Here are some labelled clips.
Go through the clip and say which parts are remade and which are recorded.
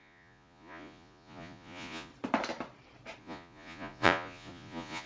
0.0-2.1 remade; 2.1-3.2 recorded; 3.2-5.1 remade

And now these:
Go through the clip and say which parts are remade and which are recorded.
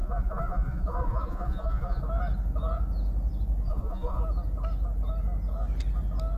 0.0-2.0 remade; 2.0-3.7 recorded; 3.7-4.2 remade; 4.2-6.4 recorded